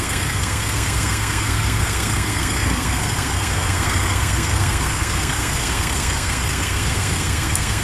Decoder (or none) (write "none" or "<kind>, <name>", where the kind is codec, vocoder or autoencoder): codec, SNAC